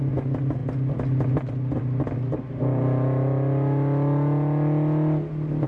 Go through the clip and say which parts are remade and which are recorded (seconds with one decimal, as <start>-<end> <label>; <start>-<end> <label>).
0.0-5.7 recorded

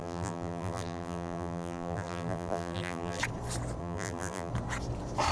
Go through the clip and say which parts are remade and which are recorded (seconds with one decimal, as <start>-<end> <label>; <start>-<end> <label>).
0.0-3.2 remade; 3.2-3.8 recorded; 3.8-4.5 remade; 4.5-5.3 recorded